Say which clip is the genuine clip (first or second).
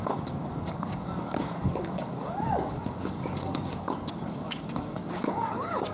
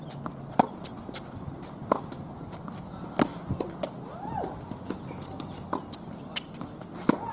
second